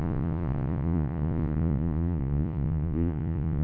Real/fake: fake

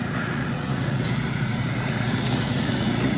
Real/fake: fake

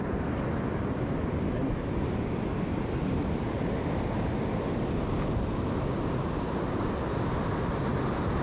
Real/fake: real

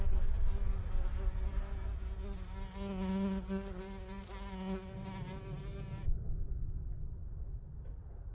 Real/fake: real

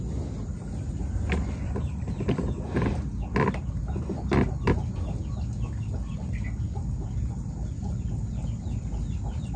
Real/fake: real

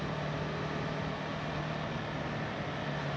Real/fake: real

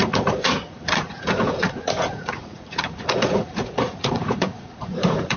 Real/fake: fake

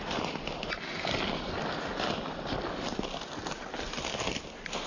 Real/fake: real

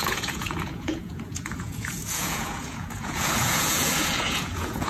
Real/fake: fake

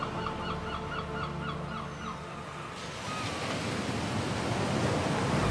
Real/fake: real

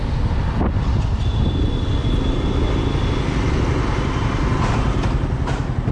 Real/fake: real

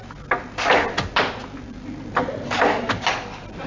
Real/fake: real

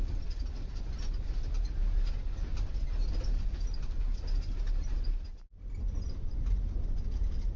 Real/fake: real